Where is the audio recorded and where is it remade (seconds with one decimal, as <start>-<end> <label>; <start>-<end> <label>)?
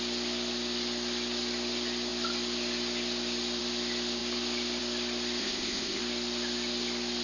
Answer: 0.0-5.4 recorded; 5.4-6.0 remade; 6.0-7.2 recorded